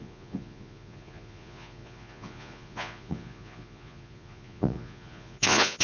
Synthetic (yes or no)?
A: yes